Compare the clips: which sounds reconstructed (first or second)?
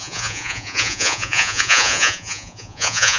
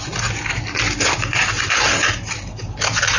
first